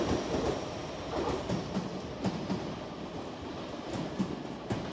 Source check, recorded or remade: recorded